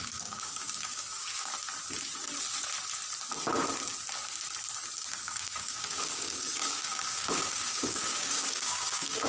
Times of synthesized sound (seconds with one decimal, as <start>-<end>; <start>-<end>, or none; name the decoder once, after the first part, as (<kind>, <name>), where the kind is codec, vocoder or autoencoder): 0.0-1.5 (codec, DAC); 5.1-9.3